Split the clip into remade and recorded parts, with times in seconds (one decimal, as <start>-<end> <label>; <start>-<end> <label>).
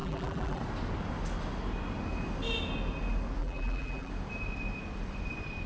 0.0-0.6 remade; 0.6-3.4 recorded; 3.4-4.1 remade; 4.1-5.7 recorded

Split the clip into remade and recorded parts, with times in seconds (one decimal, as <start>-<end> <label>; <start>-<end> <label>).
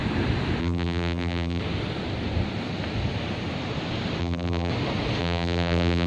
0.0-0.6 recorded; 0.6-1.6 remade; 1.6-4.2 recorded; 4.2-4.7 remade; 4.7-5.2 recorded; 5.2-6.1 remade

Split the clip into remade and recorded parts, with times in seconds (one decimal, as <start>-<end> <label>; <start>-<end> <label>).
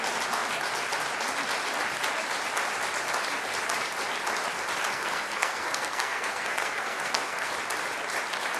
0.0-4.9 recorded; 4.9-7.5 remade; 7.5-8.6 recorded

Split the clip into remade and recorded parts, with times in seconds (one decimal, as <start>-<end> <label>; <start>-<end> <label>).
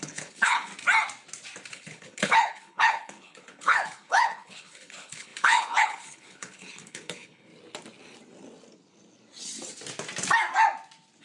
0.0-0.7 remade; 0.7-1.7 recorded; 1.7-7.5 remade; 7.5-11.2 recorded